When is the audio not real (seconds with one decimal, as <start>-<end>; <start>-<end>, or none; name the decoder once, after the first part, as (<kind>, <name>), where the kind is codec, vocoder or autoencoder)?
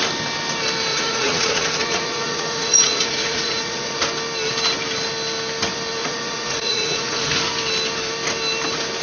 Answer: 0.9-4.0 (vocoder, Vocos); 6.0-7.4